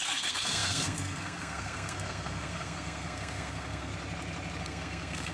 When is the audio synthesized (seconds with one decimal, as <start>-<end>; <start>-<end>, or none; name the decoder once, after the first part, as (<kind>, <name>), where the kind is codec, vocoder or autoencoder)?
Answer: 0.0-3.9 (codec, SNAC); 4.6-5.3

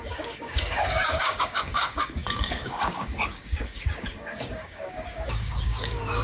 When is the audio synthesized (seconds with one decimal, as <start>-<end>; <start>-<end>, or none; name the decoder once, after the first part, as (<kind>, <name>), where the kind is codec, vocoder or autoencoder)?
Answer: 0.0-6.2 (codec, DAC)

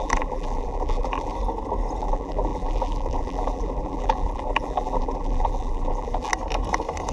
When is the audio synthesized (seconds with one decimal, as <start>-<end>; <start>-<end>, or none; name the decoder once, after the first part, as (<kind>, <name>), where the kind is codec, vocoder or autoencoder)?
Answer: 0.0-1.3 (vocoder, BigVGAN v2); 2.0-6.3

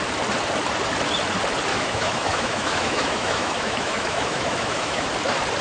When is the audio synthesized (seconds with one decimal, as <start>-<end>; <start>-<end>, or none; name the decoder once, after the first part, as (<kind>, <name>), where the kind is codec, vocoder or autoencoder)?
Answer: 1.7-5.1 (autoencoder, DAC-VAE)